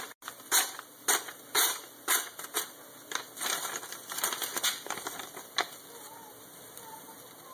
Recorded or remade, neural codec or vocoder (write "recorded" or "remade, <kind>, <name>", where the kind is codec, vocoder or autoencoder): recorded